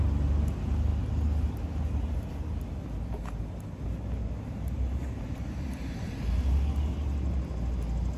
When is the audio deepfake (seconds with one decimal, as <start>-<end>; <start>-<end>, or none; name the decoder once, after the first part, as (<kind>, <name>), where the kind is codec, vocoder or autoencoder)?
4.2-6.1 (vocoder, BigVGAN v2)